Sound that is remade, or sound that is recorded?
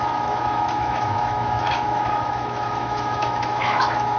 remade